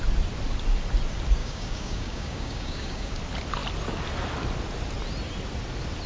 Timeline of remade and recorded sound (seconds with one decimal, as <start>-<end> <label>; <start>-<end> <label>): 0.0-1.4 recorded; 1.4-3.2 remade; 3.2-6.1 recorded